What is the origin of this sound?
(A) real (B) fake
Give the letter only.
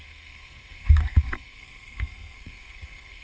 B